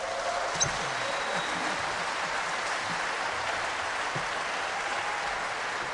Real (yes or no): yes